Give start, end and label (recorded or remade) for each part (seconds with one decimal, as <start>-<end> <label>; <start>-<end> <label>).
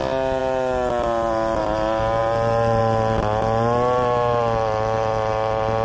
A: 0.0-5.8 recorded